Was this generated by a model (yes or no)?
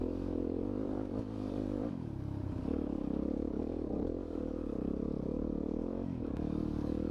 yes